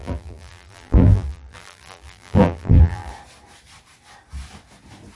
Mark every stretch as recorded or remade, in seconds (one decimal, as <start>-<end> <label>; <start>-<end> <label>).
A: 0.0-3.1 remade; 3.1-5.2 recorded